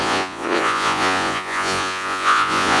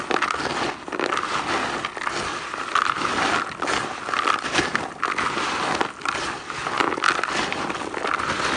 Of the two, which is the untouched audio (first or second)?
second